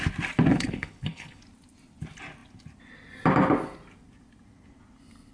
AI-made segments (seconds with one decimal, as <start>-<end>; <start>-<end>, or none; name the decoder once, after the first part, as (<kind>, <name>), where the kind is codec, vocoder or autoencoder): 0.5-1.4 (codec, HILCodec)